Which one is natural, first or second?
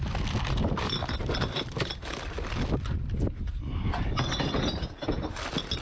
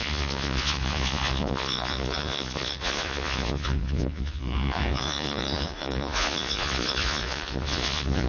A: first